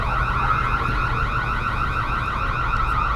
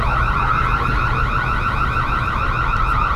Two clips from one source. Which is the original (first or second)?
first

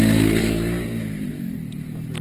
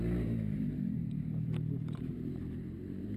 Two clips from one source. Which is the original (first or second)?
first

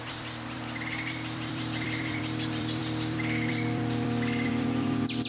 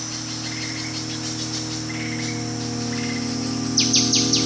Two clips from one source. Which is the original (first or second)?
second